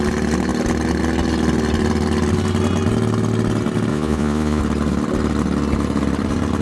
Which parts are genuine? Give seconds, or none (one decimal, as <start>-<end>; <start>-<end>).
0.0-3.9; 4.6-6.6